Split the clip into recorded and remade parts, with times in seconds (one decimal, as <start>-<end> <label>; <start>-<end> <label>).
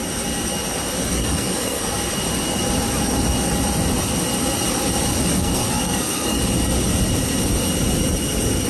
0.0-1.0 recorded; 1.0-1.9 remade; 1.9-5.3 recorded; 5.3-6.4 remade; 6.4-8.7 recorded